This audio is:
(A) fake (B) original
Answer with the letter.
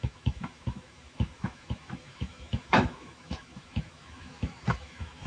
A